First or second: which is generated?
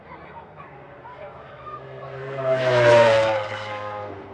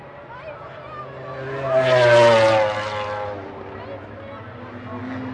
first